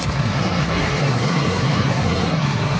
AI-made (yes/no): yes